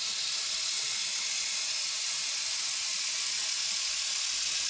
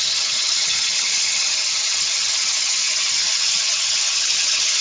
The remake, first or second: second